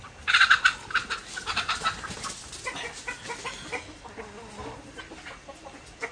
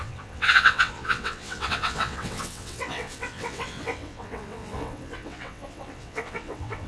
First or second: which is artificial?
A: second